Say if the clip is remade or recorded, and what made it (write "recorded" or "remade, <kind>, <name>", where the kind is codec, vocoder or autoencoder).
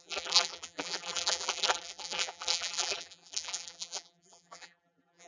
remade, vocoder, BigVGAN v2